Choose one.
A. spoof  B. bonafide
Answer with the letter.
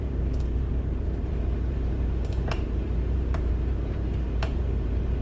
A